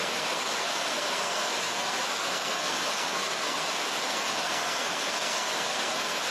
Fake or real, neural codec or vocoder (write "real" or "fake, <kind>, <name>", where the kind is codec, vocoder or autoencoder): fake, codec, SNAC